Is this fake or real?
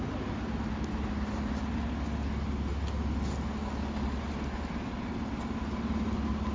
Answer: real